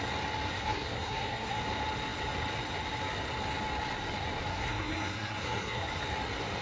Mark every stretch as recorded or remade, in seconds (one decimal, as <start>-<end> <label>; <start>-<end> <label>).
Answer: 0.0-0.5 recorded; 0.5-1.6 remade; 1.6-4.5 recorded; 4.5-6.0 remade; 6.0-6.6 recorded